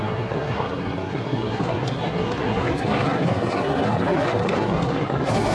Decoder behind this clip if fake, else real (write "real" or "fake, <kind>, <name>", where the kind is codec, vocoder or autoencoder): fake, codec, SNAC